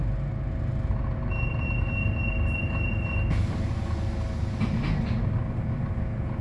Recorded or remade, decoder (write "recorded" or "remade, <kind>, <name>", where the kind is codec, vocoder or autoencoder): recorded